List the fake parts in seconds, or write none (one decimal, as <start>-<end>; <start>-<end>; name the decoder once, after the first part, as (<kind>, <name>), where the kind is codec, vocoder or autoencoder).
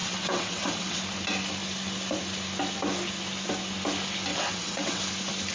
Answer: 0.0-1.0 (vocoder, WaveNeXt); 4.3-5.0